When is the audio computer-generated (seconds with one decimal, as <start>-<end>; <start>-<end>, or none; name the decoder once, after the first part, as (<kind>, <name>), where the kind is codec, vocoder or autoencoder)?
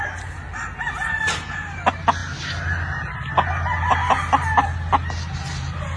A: none